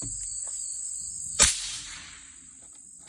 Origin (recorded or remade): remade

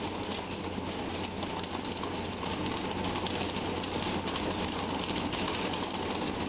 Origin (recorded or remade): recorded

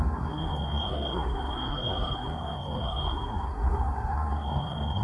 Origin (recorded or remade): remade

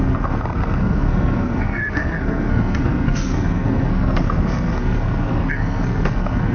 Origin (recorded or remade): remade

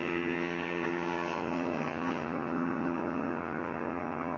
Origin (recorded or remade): remade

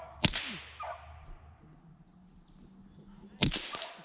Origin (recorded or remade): recorded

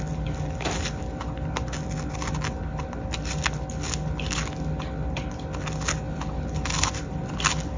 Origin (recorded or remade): recorded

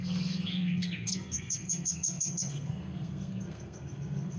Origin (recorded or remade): remade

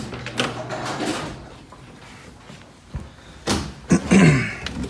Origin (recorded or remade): recorded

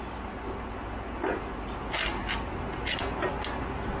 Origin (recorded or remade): recorded